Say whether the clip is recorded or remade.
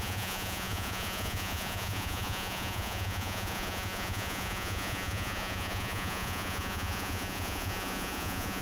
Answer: remade